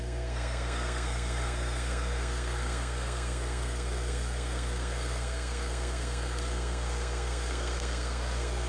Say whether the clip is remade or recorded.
remade